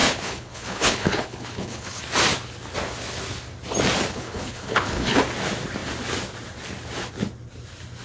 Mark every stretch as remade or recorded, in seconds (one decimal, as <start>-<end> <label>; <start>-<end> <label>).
0.0-2.0 remade; 2.0-4.1 recorded; 4.1-5.2 remade; 5.2-8.0 recorded